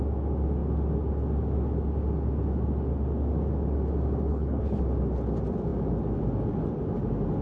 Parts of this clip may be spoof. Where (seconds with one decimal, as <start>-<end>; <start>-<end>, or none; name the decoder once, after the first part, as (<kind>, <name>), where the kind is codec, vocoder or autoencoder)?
4.3-4.8 (codec, HILCodec)